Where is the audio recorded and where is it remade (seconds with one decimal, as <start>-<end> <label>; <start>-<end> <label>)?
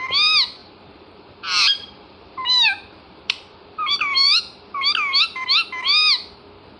0.0-0.6 recorded; 0.6-4.4 remade; 4.4-6.8 recorded